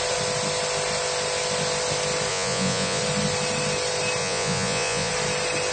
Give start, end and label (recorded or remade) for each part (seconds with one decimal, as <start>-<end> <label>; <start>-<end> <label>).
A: 0.0-2.3 recorded; 2.3-3.0 remade; 3.0-4.2 recorded; 4.2-5.1 remade; 5.1-5.7 recorded